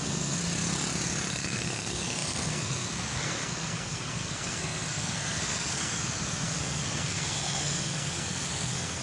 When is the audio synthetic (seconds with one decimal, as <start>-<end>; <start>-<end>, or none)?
0.0-0.4; 1.3-9.0